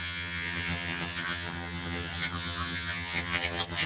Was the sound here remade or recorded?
remade